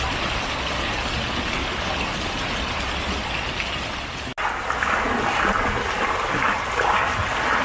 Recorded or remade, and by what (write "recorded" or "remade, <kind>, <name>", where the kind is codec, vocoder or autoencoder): recorded